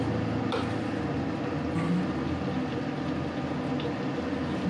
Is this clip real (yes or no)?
yes